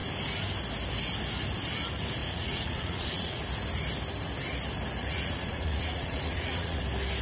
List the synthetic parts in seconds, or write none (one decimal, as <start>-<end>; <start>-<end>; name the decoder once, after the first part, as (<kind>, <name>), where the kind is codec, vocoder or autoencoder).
2.2-3.4 (vocoder, Vocos); 5.0-6.8